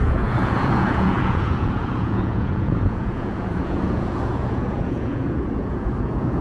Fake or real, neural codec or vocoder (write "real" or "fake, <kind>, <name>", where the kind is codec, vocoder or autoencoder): fake, vocoder, Vocos